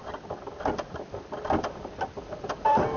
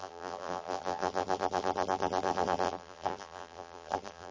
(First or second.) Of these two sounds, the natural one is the first